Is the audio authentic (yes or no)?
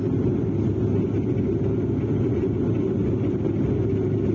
yes